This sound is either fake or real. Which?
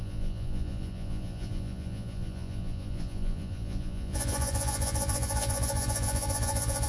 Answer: fake